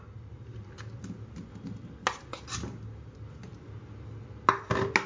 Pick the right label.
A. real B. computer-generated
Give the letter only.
A